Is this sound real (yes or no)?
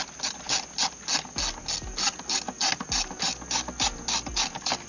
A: yes